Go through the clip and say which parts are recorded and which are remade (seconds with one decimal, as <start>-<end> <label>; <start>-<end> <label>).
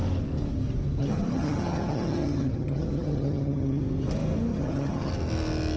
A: 0.0-1.0 recorded; 1.0-3.8 remade; 3.8-4.5 recorded; 4.5-5.1 remade; 5.1-5.8 recorded